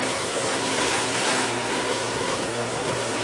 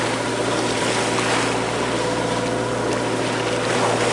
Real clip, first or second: second